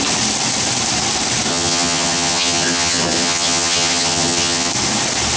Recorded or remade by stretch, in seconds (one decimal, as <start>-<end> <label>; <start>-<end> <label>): 0.0-1.5 recorded; 1.5-4.7 remade; 4.7-5.4 recorded